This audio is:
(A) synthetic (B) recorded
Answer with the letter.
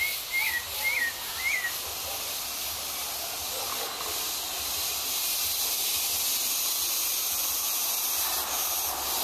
B